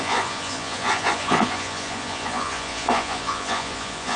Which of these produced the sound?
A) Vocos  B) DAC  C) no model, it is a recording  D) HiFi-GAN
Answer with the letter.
A